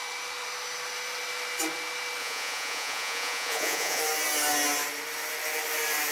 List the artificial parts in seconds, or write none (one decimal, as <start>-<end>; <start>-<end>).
2.2-4.0